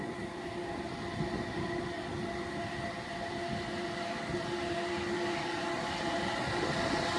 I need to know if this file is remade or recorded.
recorded